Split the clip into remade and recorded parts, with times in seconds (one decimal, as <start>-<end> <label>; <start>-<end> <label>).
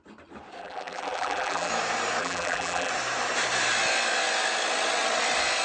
0.0-0.6 recorded; 0.6-1.7 remade; 1.7-2.2 recorded; 2.2-2.9 remade; 2.9-5.6 recorded